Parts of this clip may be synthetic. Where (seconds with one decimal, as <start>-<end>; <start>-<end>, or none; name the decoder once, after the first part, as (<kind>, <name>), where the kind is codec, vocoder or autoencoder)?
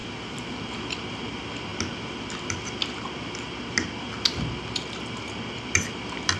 none